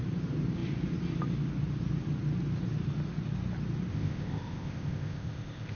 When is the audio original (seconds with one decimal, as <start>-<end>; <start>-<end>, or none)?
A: 0.0-3.9